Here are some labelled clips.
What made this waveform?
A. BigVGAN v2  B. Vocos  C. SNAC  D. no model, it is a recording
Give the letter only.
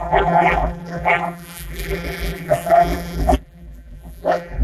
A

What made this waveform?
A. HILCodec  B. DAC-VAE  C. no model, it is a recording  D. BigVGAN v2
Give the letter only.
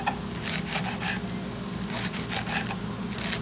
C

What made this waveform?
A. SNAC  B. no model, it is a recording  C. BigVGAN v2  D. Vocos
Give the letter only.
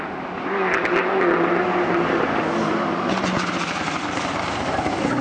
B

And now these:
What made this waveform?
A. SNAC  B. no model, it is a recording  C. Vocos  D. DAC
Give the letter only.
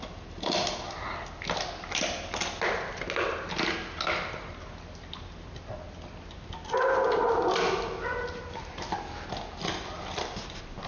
B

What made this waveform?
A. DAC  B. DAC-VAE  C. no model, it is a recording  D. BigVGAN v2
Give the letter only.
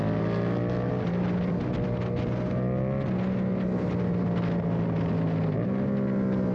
C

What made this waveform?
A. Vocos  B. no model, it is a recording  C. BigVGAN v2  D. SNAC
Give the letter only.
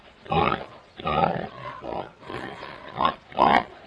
A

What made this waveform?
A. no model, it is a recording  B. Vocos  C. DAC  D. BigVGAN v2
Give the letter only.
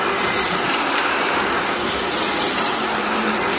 D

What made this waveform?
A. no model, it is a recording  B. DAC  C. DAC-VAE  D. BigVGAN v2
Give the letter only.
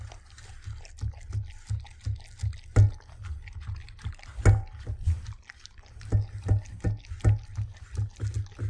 A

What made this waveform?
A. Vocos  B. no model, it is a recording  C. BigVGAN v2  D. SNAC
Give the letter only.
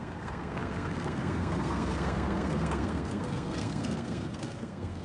D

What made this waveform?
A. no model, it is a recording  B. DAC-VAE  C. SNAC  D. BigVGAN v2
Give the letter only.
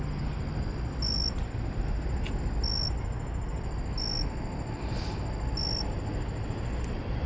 A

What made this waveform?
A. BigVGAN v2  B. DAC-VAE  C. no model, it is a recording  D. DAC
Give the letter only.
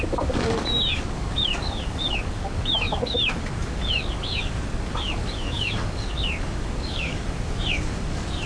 D